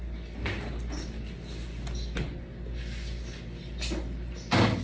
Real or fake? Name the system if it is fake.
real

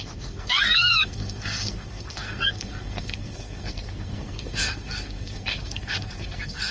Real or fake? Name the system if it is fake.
fake, codec, SNAC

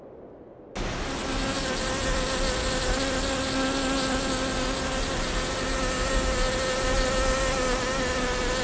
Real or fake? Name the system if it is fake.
real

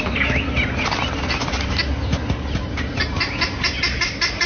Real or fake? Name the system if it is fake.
real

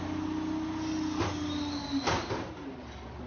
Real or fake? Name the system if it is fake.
real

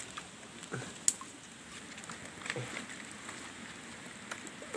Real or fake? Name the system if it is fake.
real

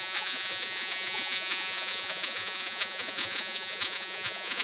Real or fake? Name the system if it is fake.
fake, vocoder, Vocos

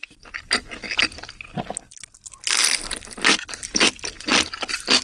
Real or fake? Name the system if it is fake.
real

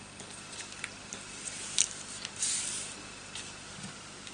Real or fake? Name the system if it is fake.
real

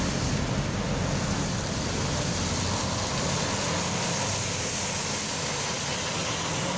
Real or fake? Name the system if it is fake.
real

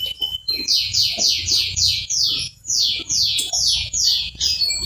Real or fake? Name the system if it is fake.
fake, vocoder, Vocos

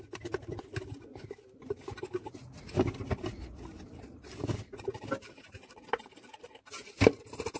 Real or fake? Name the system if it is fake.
real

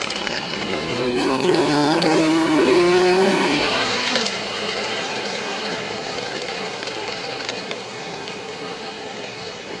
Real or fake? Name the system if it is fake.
fake, codec, SNAC